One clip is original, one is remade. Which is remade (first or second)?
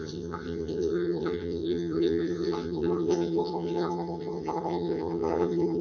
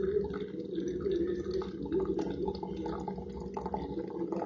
first